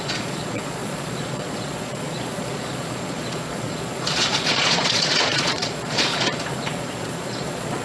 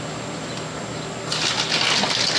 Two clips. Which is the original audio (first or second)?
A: second